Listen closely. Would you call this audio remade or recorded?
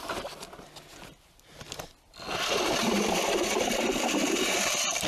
recorded